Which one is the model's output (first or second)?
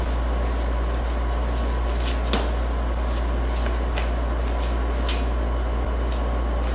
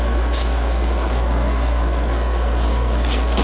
second